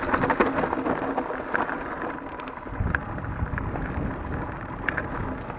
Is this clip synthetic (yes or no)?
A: no